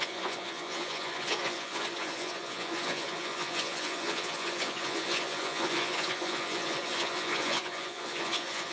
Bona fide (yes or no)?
no